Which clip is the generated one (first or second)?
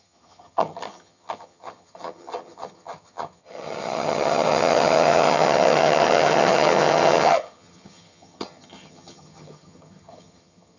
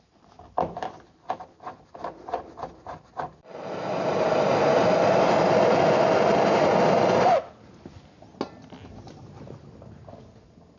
first